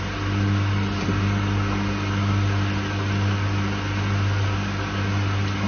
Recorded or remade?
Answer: recorded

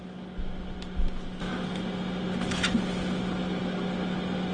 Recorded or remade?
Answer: recorded